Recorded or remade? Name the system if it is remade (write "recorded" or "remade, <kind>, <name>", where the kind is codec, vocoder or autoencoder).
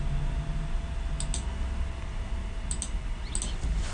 recorded